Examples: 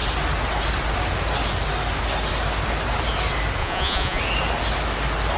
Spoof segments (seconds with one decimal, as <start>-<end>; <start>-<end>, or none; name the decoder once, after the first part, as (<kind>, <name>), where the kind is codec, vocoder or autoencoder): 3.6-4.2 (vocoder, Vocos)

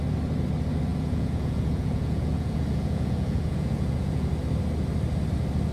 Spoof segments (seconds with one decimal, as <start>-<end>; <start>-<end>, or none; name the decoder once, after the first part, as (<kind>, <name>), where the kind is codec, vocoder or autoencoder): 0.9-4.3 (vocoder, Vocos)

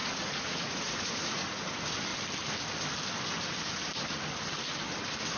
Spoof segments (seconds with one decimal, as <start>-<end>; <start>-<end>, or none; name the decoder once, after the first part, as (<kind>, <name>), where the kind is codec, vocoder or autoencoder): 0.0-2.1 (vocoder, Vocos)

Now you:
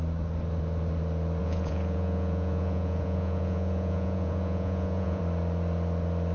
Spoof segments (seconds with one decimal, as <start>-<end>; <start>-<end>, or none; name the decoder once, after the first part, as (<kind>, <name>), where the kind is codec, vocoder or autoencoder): 1.4-5.2 (vocoder, Vocos)

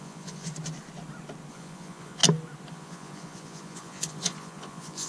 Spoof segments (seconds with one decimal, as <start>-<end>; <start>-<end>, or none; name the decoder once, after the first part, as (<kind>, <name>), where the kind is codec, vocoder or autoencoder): 0.0-0.5 (vocoder, Vocos); 1.5-2.2; 2.7-5.1

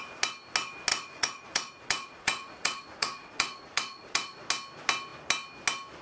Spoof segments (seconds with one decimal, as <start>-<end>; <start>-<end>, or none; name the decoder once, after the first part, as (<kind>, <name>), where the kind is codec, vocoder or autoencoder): 0.9-4.5 (vocoder, Vocos)

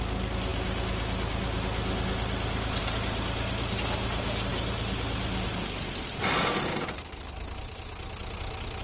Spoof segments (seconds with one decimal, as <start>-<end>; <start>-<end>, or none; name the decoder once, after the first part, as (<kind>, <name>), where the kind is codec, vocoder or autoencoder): none

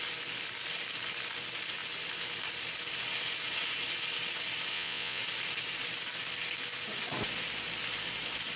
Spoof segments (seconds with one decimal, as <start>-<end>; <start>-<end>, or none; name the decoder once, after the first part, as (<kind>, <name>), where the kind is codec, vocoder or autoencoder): 4.7-5.2 (vocoder, Vocos)